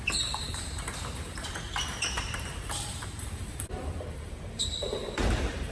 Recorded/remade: remade